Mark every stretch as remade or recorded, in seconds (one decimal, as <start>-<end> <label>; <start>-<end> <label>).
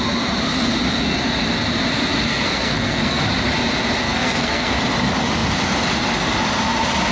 0.0-2.3 recorded; 2.3-3.2 remade; 3.2-4.0 recorded; 4.0-4.8 remade; 4.8-7.1 recorded